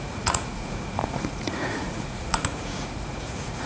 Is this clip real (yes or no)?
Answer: no